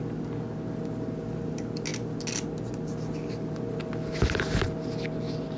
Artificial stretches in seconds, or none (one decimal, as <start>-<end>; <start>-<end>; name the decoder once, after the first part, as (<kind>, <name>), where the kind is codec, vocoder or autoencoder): none